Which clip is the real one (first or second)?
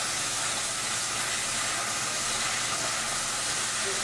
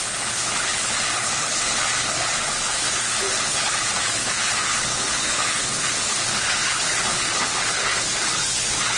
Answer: first